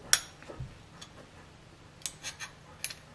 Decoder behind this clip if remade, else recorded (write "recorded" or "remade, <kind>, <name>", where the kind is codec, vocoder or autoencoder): recorded